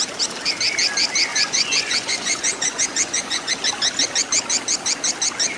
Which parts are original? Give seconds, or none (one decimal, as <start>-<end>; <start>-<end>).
0.0-1.3; 3.5-5.6